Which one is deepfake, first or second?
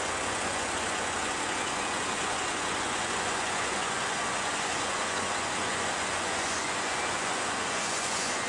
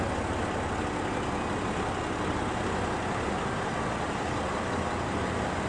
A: first